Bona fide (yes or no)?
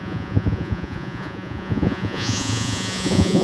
no